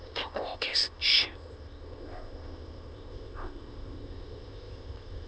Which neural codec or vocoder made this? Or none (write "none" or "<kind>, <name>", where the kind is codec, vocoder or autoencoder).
codec, ZipCodec